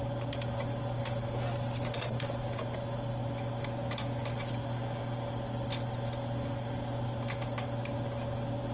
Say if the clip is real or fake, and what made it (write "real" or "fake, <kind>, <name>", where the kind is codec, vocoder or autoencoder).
real